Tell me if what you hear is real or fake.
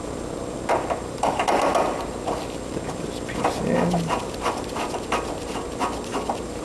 real